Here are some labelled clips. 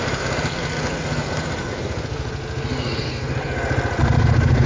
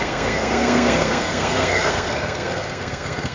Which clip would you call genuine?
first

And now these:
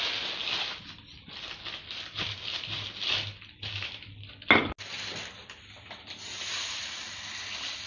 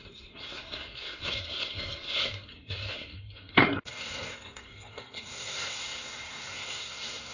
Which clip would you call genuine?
first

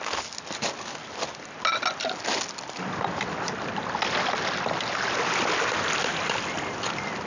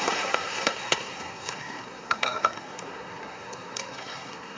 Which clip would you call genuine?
first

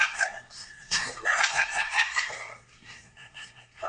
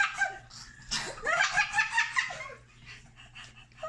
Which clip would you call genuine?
second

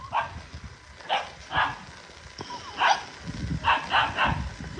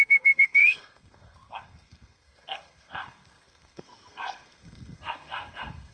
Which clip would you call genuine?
first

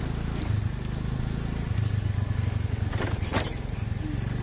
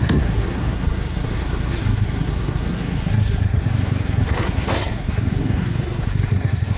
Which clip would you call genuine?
first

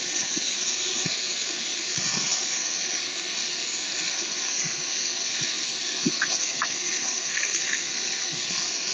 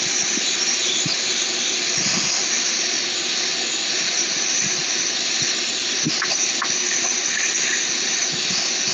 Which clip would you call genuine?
second